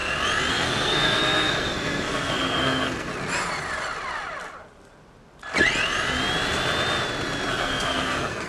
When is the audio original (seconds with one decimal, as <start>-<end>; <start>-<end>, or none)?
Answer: 0.0-0.5; 3.1-7.5